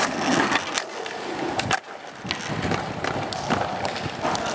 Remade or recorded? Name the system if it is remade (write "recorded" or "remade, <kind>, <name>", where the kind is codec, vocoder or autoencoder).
recorded